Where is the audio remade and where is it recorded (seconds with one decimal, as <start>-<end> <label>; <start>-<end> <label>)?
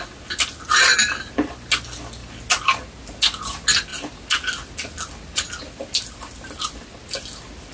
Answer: 0.0-7.7 recorded